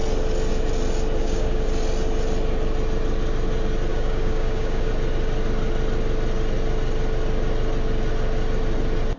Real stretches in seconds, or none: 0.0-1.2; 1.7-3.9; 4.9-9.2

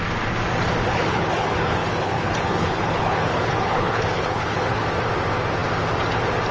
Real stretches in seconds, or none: 0.0-0.9; 4.8-6.5

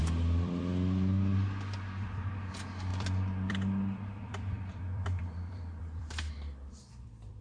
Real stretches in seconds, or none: 0.6-2.9